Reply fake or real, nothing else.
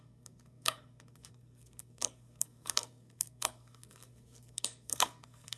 fake